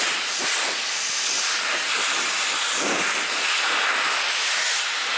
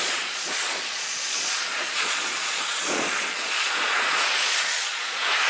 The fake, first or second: second